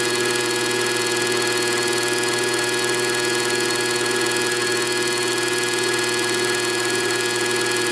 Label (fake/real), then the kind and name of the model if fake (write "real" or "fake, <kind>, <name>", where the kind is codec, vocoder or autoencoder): real